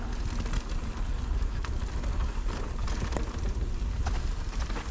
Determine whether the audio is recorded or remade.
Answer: recorded